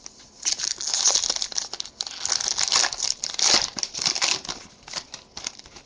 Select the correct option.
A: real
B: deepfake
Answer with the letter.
A